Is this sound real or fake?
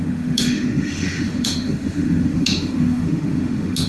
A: fake